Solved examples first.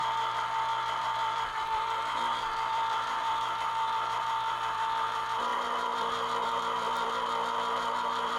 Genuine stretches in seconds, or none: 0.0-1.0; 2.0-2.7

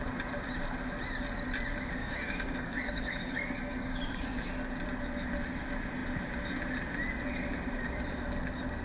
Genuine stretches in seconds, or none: 0.0-2.0; 4.5-8.8

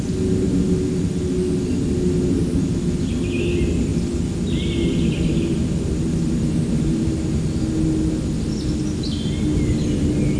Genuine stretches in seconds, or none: 0.0-10.4

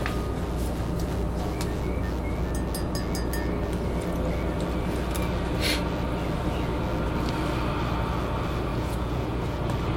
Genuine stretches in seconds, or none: 0.0-8.7; 9.6-10.0

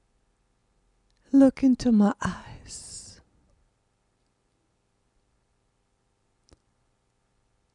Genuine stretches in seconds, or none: 0.0-7.7